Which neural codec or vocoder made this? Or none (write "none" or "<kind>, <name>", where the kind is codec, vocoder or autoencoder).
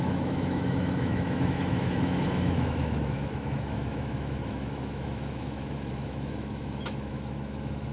autoencoder, DAC-VAE